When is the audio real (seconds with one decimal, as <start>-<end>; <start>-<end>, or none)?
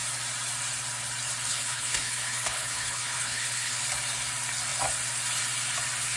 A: 0.0-1.5; 3.8-6.2